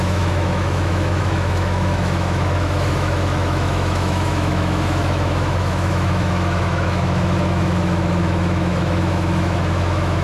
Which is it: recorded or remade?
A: remade